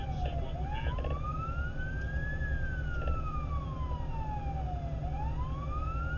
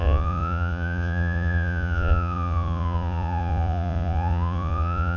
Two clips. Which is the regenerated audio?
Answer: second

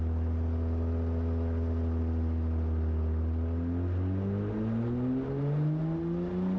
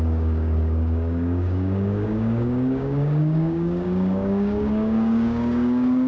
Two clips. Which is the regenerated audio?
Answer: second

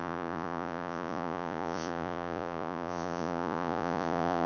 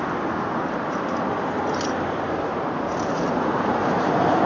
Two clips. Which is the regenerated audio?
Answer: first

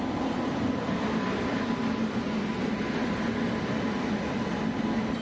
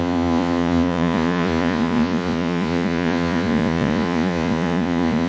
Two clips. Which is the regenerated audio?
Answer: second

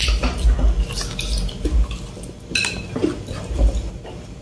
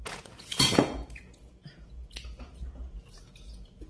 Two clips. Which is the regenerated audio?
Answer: second